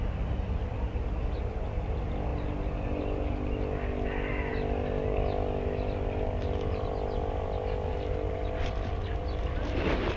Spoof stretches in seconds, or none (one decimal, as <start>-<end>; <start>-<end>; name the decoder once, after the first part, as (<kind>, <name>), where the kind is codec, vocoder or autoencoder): none